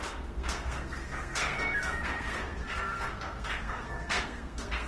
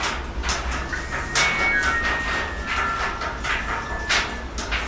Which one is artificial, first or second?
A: first